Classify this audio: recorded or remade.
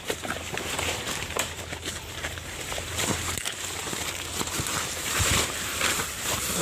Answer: remade